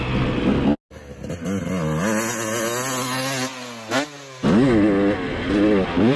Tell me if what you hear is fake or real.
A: real